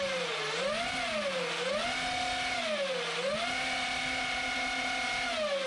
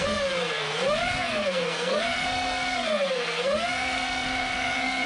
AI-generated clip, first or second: second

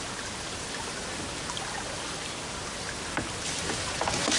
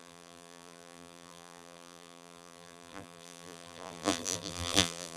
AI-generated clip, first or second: second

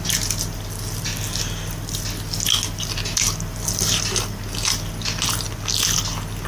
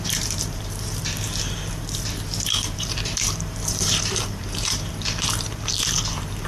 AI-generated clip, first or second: second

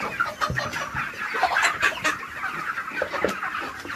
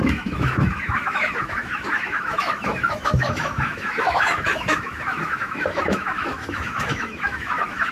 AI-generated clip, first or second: second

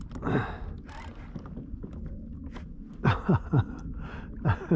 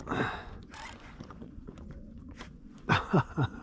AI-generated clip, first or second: second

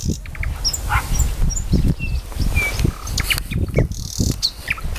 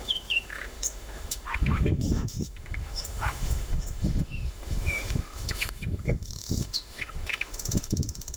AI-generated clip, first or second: second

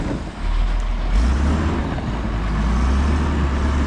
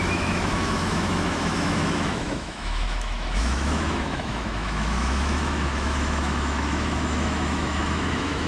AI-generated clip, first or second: second